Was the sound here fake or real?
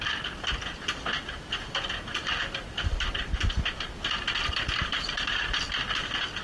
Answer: real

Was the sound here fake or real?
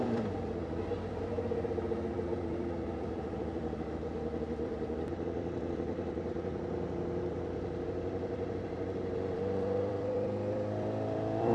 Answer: fake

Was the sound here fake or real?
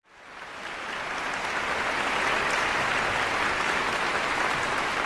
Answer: real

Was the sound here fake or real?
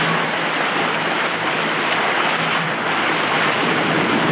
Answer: real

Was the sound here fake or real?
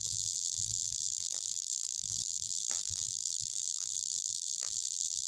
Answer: fake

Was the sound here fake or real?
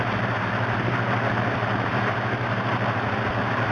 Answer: fake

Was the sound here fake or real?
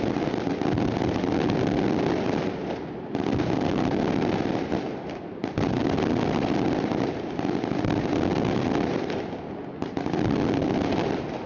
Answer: real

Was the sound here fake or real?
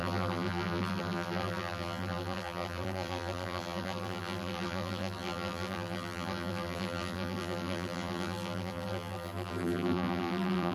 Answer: fake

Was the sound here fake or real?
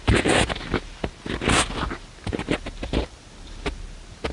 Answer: real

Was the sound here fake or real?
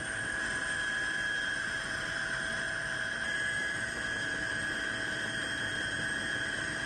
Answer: fake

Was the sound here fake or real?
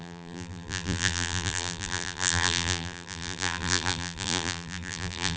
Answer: fake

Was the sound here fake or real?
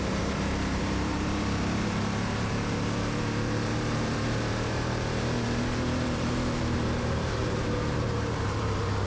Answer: fake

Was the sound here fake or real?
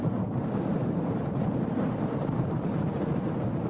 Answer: fake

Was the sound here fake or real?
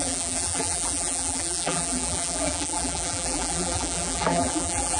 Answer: fake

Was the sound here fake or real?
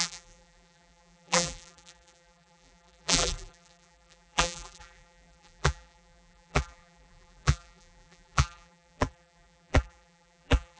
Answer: fake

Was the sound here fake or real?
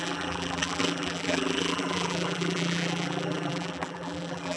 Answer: fake